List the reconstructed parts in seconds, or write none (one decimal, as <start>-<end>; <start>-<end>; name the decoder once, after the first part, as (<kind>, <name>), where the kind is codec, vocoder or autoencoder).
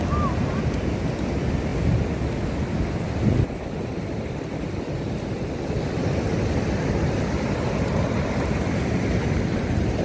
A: none